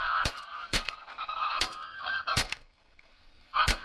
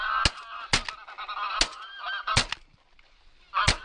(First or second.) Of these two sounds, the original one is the second